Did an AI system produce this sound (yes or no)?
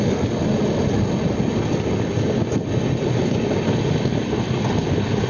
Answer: no